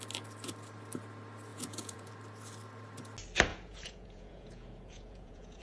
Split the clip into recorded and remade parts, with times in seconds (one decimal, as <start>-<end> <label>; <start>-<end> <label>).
0.0-1.5 recorded; 1.5-2.1 remade; 2.1-3.5 recorded; 3.5-5.6 remade